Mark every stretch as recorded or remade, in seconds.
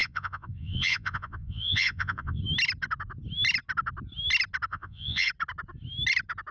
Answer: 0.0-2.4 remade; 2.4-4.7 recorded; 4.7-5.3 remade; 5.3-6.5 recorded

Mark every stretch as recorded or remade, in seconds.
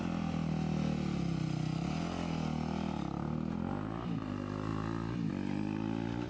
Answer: 0.0-6.3 recorded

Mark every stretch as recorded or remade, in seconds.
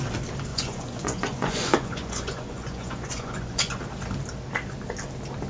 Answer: 0.0-0.5 recorded; 0.5-3.8 remade; 3.8-5.5 recorded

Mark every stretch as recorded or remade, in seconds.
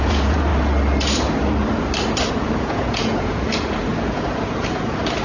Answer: 0.0-0.5 remade; 0.5-2.3 recorded; 2.3-5.2 remade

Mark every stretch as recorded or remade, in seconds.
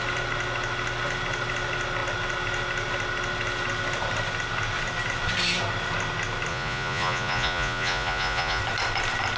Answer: 0.0-6.5 recorded; 6.5-8.6 remade; 8.6-9.4 recorded